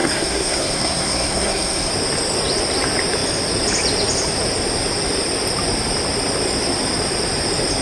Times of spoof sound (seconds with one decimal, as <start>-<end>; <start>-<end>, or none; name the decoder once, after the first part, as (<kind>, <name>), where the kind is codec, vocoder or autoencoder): 0.0-1.9 (codec, SNAC)